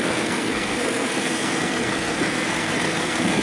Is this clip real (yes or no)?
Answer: no